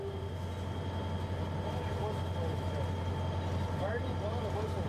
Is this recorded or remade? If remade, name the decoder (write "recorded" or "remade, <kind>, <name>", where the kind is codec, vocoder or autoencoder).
recorded